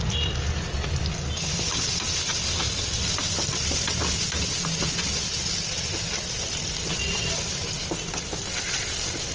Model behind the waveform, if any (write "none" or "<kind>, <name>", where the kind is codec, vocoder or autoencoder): none